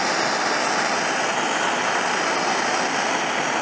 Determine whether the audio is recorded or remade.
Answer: recorded